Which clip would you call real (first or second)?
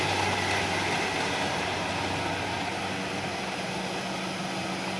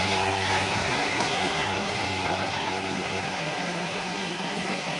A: first